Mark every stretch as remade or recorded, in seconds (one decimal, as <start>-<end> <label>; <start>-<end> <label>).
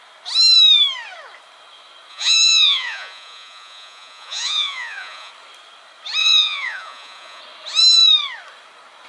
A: 0.0-2.1 recorded; 2.1-5.3 remade; 5.3-6.2 recorded; 6.2-7.4 remade; 7.4-9.1 recorded